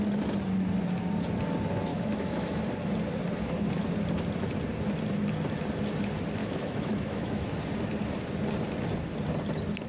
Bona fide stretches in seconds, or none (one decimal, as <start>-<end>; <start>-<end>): 0.0-1.9; 2.6-6.4; 7.6-9.9

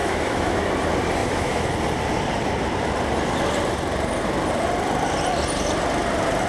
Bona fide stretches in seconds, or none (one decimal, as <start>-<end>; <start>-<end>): 0.7-1.2; 1.7-6.5